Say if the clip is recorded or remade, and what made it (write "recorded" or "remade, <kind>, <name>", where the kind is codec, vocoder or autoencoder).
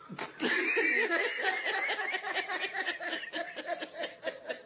recorded